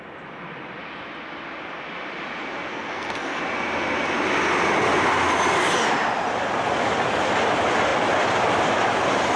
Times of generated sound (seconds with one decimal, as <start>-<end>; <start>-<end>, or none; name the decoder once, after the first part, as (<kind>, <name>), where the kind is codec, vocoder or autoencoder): 2.7-3.4 (codec, SNAC)